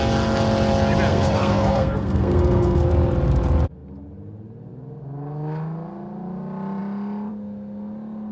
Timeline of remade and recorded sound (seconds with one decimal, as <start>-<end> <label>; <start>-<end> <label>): 0.0-1.1 recorded; 1.1-2.9 remade; 2.9-8.3 recorded